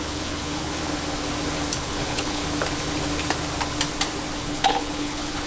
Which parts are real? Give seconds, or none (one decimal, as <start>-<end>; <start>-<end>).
0.8-1.8; 2.4-4.4